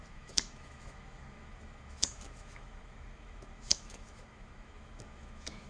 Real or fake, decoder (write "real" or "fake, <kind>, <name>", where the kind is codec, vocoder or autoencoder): fake, autoencoder, DAC-VAE